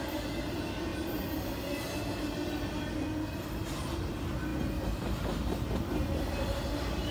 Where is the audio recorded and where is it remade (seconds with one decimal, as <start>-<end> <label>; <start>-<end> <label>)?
0.0-7.1 recorded